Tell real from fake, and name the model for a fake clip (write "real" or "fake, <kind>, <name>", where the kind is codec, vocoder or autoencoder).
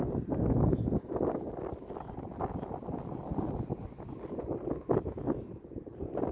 real